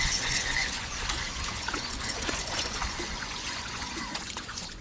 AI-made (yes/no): yes